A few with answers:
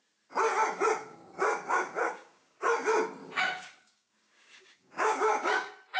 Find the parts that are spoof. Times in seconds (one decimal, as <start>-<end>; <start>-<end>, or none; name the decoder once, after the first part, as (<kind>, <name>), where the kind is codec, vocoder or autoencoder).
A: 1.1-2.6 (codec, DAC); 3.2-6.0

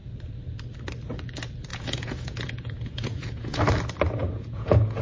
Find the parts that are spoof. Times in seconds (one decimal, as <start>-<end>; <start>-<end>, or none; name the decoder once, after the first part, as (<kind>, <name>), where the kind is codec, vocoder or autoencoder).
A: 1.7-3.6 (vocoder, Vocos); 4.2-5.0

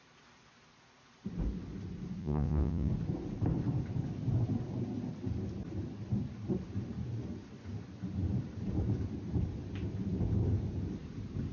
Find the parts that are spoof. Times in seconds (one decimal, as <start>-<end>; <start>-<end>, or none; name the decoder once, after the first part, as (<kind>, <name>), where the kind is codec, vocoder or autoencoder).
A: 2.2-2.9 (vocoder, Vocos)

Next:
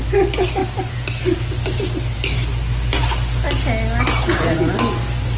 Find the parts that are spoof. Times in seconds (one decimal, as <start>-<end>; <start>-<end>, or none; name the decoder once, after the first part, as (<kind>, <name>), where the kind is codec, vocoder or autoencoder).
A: none

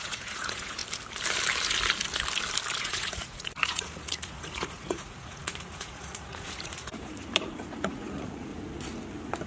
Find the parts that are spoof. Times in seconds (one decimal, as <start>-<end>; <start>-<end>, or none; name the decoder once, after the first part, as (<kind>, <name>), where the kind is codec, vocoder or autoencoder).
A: 0.0-0.8 (vocoder, Vocos); 2.8-8.5

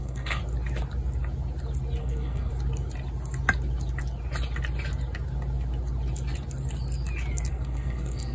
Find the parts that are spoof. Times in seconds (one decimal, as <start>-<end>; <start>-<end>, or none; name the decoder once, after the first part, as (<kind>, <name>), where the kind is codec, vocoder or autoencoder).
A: 0.0-0.4 (codec, SNAC); 2.0-2.5; 7.5-8.3

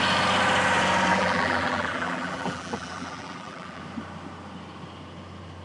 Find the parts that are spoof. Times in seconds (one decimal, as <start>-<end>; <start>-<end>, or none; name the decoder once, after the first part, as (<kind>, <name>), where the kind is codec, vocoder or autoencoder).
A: 1.1-3.8 (vocoder, BigVGAN v2)

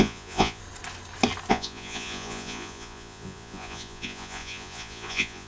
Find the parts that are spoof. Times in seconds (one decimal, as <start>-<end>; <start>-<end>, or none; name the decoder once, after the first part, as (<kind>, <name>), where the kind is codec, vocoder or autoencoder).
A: 0.0-0.6 (vocoder, Vocos); 1.5-5.5